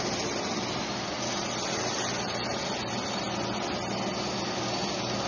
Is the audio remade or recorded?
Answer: recorded